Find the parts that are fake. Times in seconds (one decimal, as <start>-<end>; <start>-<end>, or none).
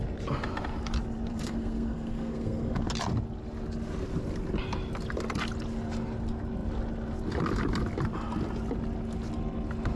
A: 1.3-2.9